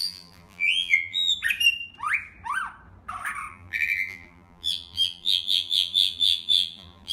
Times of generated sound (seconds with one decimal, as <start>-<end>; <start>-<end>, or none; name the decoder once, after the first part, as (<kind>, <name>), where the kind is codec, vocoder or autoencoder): 0.0-1.3 (vocoder, BigVGAN v2); 3.5-7.1